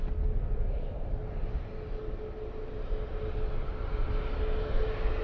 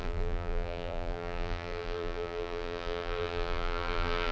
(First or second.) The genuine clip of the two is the first